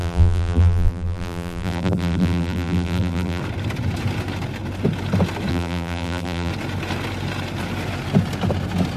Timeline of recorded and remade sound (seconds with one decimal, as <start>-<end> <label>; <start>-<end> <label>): 0.0-3.4 remade; 3.4-5.5 recorded; 5.5-6.5 remade; 6.5-9.0 recorded

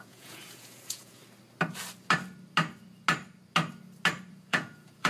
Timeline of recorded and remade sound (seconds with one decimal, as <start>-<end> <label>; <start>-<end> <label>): 0.0-1.2 remade; 1.2-4.3 recorded; 4.3-5.1 remade

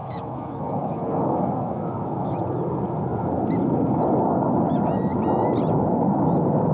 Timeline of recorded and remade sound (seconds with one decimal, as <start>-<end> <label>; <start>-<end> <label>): 0.0-2.4 remade; 2.4-6.7 recorded

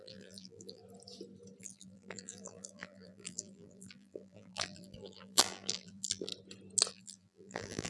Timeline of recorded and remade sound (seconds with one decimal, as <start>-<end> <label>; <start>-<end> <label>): 0.0-0.8 remade; 0.8-1.6 recorded; 1.6-6.3 remade; 6.3-6.9 recorded; 6.9-7.9 remade

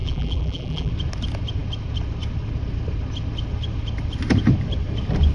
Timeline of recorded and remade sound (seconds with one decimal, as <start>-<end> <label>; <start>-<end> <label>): 0.0-0.9 remade; 0.9-5.3 recorded